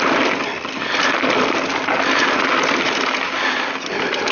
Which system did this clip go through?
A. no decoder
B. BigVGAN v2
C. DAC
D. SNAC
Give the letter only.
A